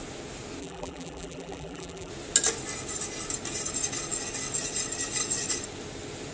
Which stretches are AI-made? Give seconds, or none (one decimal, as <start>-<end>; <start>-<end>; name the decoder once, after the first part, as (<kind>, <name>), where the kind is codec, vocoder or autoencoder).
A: 0.6-2.1 (vocoder, BigVGAN v2)